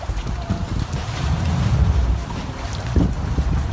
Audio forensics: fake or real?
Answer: fake